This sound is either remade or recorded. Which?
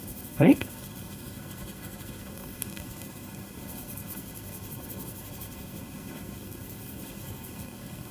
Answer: remade